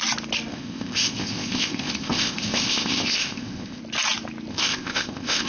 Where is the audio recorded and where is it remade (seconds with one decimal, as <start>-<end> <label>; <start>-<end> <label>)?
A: 0.0-0.5 recorded; 0.5-3.8 remade; 3.8-4.5 recorded; 4.5-5.5 remade